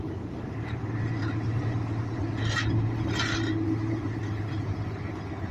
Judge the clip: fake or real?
fake